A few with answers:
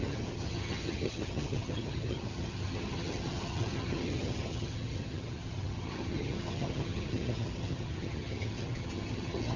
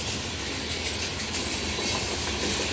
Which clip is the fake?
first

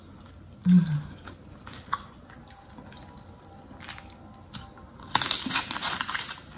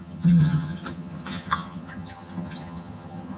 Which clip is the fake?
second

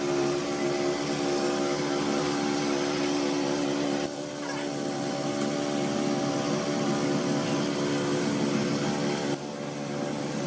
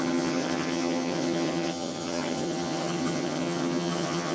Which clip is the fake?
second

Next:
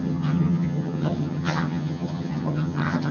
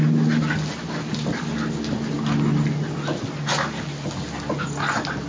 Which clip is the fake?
first